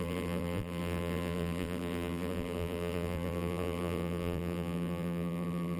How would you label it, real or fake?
fake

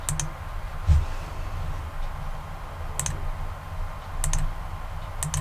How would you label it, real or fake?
real